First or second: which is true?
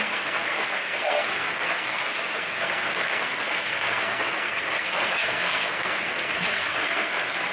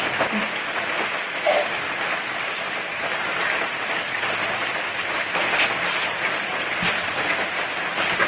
second